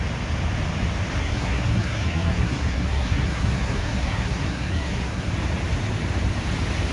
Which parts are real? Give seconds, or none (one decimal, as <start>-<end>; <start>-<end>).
0.0-1.2; 5.3-6.9